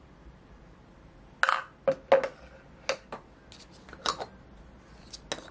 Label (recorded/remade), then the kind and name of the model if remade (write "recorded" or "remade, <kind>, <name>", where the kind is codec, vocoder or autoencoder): recorded